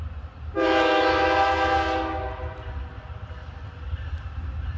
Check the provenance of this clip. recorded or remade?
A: recorded